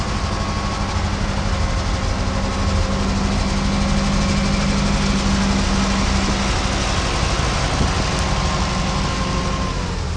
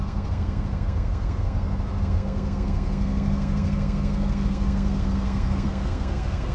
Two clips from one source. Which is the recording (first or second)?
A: first